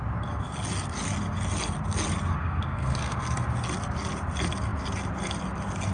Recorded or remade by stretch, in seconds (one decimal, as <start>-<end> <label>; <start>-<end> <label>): 0.0-2.4 recorded; 2.4-3.2 remade; 3.2-5.9 recorded

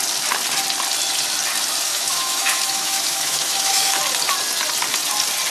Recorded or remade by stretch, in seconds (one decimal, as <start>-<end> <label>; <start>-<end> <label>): 0.0-1.9 recorded; 1.9-4.0 remade; 4.0-5.5 recorded

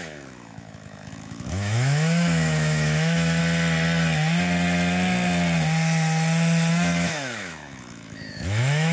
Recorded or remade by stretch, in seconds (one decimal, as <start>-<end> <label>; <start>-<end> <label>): 0.0-3.4 remade; 3.4-6.7 recorded; 6.7-8.9 remade

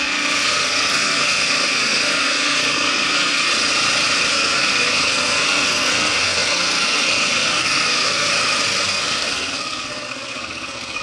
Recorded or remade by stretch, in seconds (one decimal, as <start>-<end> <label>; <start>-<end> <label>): 0.0-3.5 remade; 3.5-4.3 recorded; 4.3-8.3 remade; 8.3-8.9 recorded; 8.9-11.0 remade

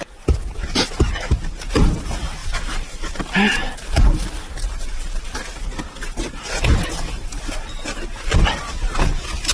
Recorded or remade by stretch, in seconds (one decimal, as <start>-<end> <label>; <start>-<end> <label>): 0.0-2.4 recorded; 2.4-5.5 remade; 5.5-9.5 recorded

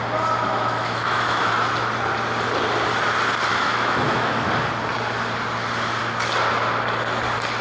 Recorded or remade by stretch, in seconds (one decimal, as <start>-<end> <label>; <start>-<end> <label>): 0.0-0.5 recorded; 0.5-1.5 remade; 1.5-3.5 recorded; 3.5-4.5 remade; 4.5-7.6 recorded

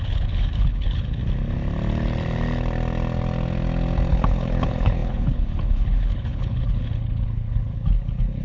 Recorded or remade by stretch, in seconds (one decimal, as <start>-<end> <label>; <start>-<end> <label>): 0.0-1.2 remade; 1.2-4.1 recorded; 4.1-8.4 remade

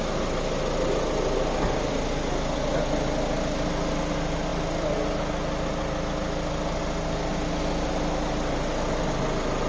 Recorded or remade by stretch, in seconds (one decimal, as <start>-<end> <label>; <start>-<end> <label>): 0.0-9.7 recorded